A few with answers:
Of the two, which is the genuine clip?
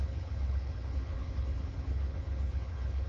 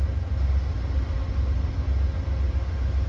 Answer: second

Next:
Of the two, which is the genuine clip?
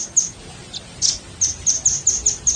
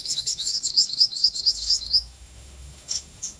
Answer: first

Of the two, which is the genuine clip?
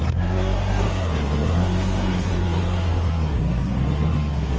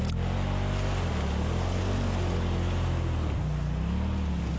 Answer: second